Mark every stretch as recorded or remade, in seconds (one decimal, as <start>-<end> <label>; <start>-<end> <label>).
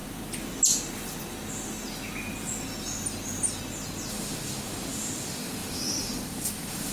0.0-4.1 recorded; 4.1-6.9 remade